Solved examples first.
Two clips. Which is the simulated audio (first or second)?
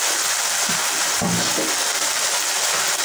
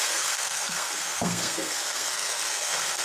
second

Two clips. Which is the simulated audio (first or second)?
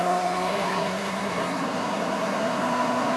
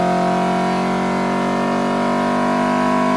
first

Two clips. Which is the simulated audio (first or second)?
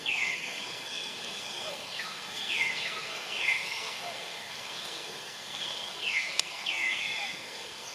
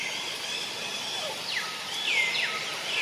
first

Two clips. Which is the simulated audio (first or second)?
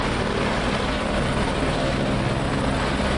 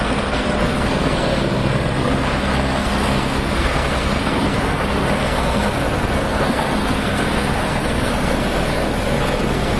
second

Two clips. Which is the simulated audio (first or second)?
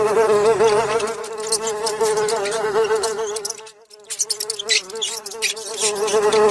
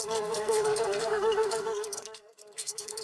second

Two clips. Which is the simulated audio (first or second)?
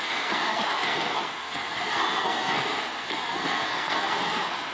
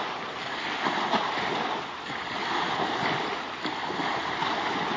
first